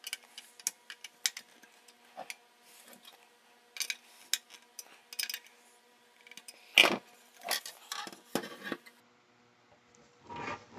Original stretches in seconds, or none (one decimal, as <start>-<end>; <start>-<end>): 0.0-10.8